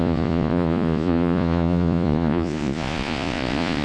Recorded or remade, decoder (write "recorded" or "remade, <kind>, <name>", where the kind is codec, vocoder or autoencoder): remade, vocoder, Vocos